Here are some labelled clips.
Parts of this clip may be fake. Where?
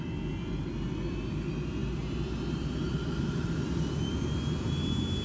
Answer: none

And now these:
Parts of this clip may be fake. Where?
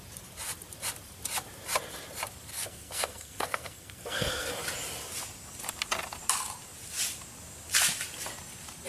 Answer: 2.5-4.5 (codec, SNAC)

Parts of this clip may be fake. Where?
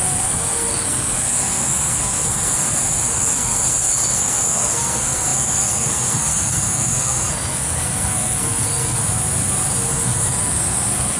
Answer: 0.0-9.0 (codec, SNAC); 9.9-11.2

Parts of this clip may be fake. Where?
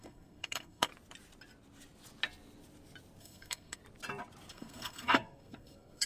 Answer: 0.0-0.9 (codec, SNAC); 3.2-3.8; 4.5-6.1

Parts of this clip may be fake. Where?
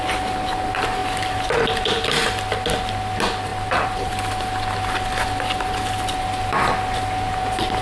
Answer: 3.5-4.1 (vocoder, BigVGAN v2)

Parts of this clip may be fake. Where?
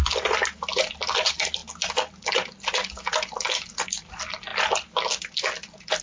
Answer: none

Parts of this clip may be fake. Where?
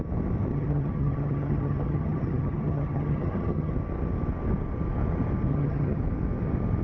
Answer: 0.5-3.7 (vocoder, HiFi-GAN); 5.5-6.0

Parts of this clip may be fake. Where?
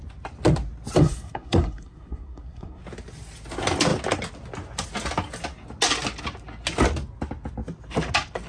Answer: 1.0-2.8 (codec, SNAC)